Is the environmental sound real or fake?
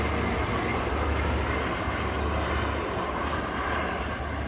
real